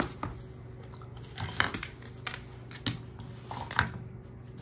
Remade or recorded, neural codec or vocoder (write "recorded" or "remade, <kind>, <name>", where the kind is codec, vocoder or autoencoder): recorded